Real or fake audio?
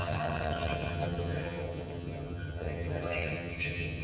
fake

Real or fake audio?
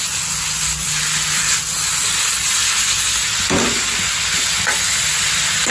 real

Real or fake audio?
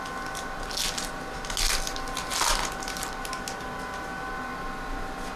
real